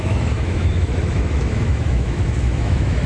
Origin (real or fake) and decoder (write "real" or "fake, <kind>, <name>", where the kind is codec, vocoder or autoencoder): fake, autoencoder, DAC-VAE